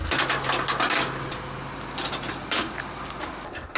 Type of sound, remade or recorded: recorded